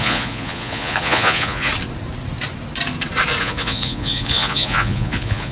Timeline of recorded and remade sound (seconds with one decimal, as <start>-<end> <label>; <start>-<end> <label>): 0.0-1.7 remade; 1.7-3.4 recorded; 3.4-5.5 remade